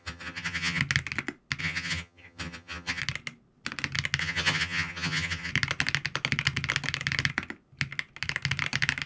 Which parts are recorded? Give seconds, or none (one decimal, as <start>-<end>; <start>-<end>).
0.8-1.6; 3.0-4.2; 5.5-9.1